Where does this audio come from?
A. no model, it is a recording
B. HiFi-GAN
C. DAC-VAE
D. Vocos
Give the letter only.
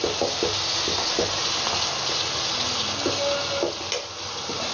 A